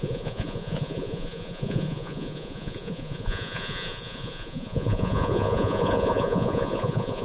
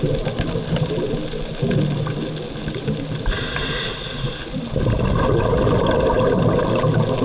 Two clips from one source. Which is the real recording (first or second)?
second